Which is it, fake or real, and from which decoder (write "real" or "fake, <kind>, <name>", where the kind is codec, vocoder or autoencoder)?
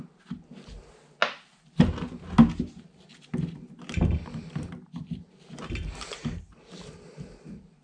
real